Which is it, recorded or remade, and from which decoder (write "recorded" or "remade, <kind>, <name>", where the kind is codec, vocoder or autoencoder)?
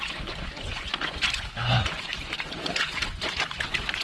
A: remade, vocoder, Vocos